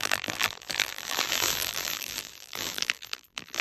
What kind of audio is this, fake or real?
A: fake